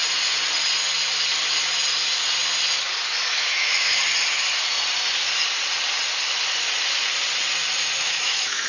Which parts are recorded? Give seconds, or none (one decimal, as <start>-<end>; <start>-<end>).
0.0-3.3; 4.0-8.0